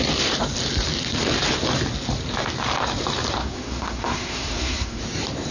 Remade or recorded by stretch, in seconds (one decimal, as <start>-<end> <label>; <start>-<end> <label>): 0.0-3.4 recorded; 3.4-5.0 remade; 5.0-5.5 recorded